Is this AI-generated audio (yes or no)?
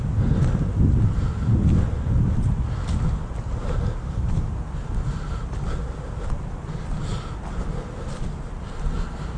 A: no